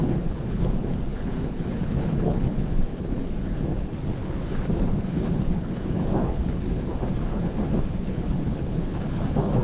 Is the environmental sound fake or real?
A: fake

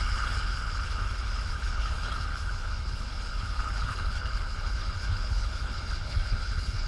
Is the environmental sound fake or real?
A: fake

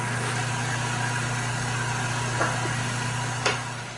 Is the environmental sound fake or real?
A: real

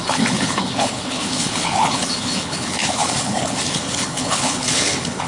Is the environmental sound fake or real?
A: fake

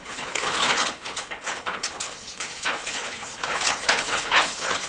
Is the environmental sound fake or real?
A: fake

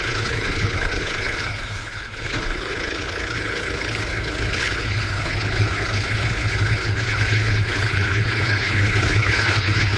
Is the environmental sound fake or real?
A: fake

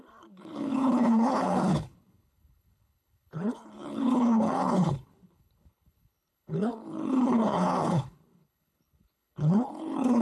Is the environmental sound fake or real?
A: fake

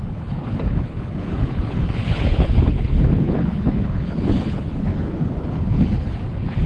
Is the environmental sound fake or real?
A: fake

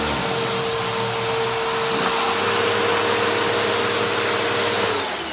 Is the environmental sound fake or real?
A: real